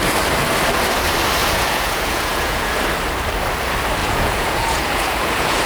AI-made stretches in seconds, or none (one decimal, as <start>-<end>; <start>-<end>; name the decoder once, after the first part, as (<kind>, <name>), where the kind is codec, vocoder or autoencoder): 1.4-2.8 (vocoder, Vocos); 4.0-5.7